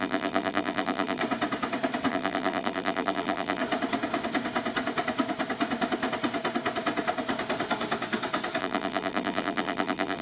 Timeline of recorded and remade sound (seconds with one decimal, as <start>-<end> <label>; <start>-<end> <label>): 0.0-1.2 remade; 1.2-2.1 recorded; 2.1-3.6 remade; 3.6-8.6 recorded; 8.6-10.2 remade